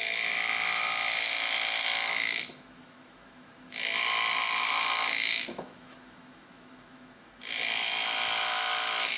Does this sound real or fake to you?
fake